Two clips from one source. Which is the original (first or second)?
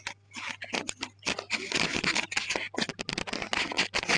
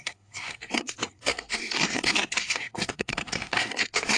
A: first